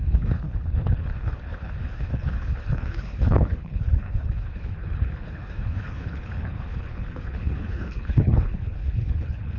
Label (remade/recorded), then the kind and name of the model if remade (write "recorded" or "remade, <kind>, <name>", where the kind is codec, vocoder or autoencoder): remade, codec, HILCodec